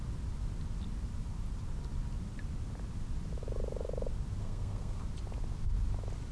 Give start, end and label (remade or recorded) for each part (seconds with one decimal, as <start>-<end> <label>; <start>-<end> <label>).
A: 0.0-4.4 recorded; 4.4-5.0 remade; 5.0-6.3 recorded